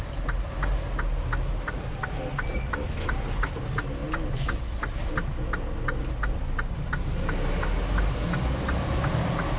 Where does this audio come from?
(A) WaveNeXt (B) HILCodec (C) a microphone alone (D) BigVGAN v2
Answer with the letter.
C